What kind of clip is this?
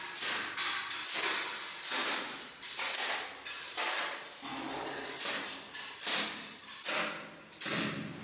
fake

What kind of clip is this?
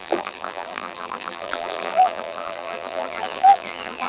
fake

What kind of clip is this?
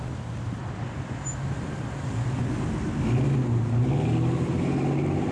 real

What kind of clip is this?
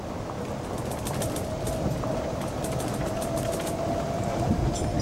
fake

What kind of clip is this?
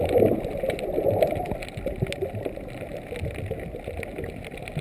real